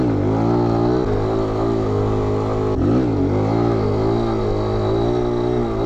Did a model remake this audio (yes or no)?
no